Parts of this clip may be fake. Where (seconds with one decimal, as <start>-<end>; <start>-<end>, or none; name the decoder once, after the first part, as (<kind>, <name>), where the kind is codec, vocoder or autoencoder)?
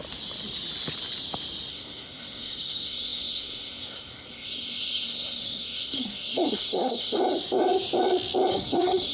1.7-7.2 (codec, SNAC); 8.5-9.1